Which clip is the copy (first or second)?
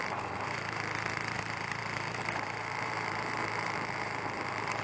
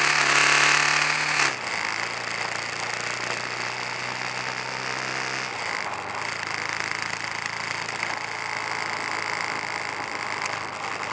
first